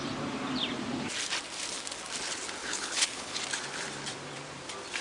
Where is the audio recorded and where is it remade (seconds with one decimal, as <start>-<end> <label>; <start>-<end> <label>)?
0.0-2.6 recorded; 2.6-3.4 remade; 3.4-5.0 recorded